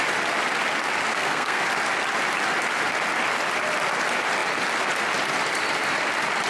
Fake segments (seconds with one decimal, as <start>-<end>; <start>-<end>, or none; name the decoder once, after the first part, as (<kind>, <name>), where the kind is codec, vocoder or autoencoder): 1.1-1.6 (codec, SNAC)